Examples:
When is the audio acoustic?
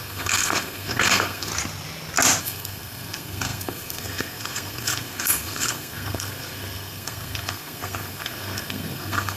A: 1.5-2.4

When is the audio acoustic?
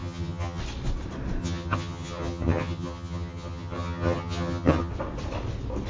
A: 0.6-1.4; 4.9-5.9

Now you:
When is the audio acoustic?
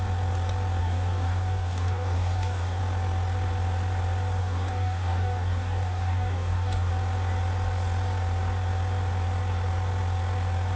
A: 0.0-0.8; 2.8-4.4; 6.9-10.8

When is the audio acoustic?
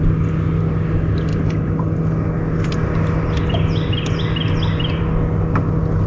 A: 0.0-6.1